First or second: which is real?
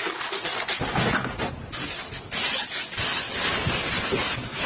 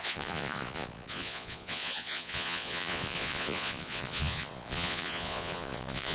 first